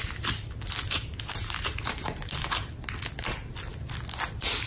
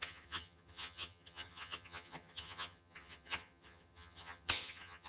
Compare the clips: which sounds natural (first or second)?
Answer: first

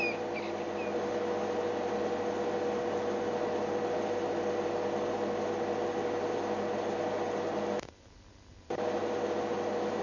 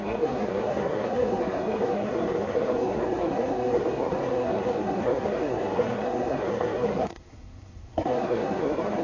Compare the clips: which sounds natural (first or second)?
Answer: first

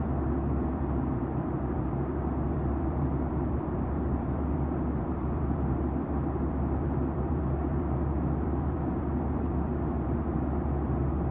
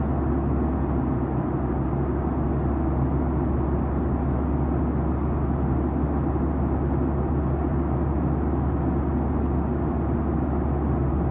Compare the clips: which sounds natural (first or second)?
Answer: second